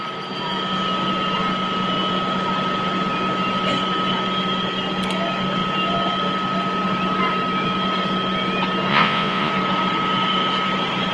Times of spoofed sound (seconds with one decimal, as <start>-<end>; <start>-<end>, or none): 8.9-9.5